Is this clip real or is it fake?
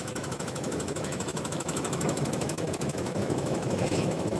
fake